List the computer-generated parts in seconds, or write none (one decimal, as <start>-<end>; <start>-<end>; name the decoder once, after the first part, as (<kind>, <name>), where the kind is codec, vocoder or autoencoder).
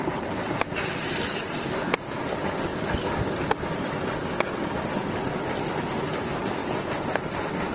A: 1.8-2.3 (vocoder, Vocos); 6.6-7.2